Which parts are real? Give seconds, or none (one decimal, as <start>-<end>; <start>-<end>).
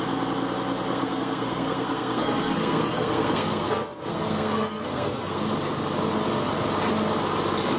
0.0-0.9; 5.4-7.8